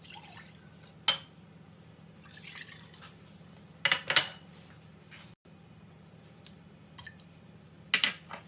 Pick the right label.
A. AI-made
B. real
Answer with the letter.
B